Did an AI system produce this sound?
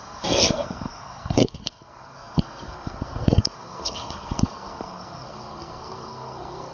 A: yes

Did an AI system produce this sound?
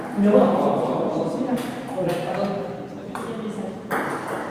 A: no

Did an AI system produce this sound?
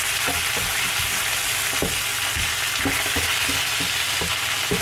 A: no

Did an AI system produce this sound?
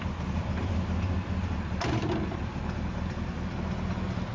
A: no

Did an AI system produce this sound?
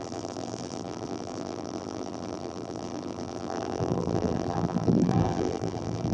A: yes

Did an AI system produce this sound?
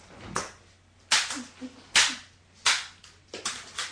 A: no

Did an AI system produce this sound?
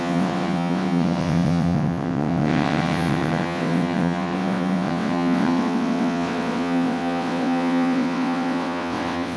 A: yes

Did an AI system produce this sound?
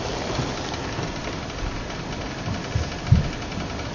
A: no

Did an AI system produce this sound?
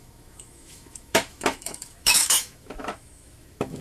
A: yes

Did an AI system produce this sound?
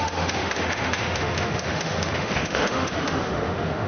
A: yes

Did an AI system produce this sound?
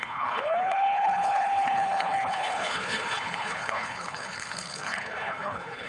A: yes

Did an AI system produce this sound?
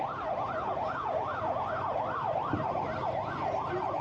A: no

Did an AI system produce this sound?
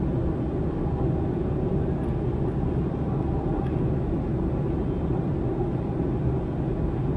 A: no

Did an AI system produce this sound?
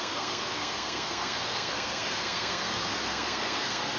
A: yes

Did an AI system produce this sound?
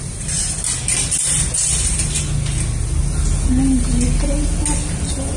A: no